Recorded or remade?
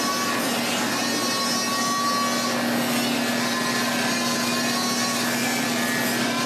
recorded